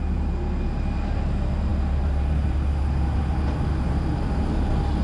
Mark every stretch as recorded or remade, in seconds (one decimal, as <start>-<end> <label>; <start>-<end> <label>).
0.0-5.0 recorded